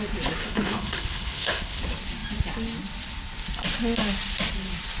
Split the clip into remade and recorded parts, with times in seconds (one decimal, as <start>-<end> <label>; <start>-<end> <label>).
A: 0.0-0.4 recorded; 0.4-1.8 remade; 1.8-5.0 recorded